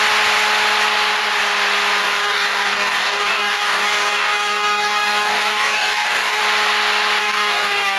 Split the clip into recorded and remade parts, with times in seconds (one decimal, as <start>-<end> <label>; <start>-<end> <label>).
0.0-2.0 recorded; 2.0-6.4 remade; 6.4-7.2 recorded; 7.2-8.0 remade